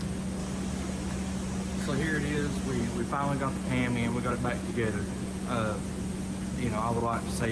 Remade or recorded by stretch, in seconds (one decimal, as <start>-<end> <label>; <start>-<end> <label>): 0.0-7.5 recorded